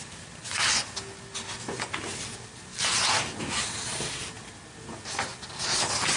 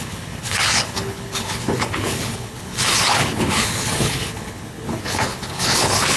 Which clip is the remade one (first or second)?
second